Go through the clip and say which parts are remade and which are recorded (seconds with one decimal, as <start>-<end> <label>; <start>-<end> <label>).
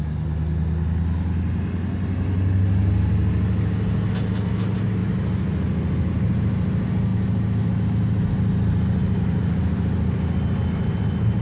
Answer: 0.0-11.4 recorded